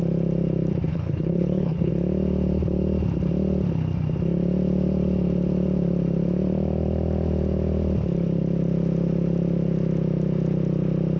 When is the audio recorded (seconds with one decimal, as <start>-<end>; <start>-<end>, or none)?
0.0-0.9; 1.9-11.2